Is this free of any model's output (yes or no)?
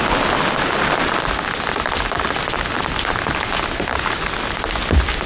yes